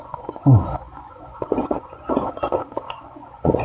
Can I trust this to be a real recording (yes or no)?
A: no